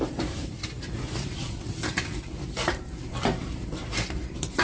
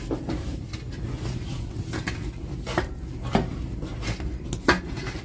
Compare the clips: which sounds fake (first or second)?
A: first